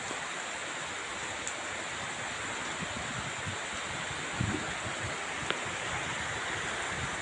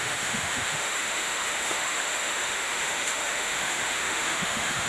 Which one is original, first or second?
first